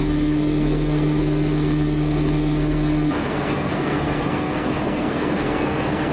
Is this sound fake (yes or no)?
yes